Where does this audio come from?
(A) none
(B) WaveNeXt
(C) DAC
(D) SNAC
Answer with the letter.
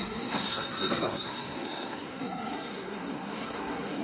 D